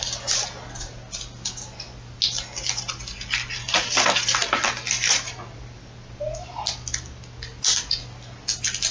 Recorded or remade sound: recorded